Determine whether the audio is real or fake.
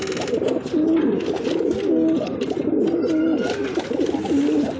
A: real